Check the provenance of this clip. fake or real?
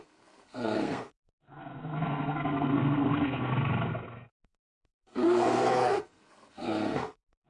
fake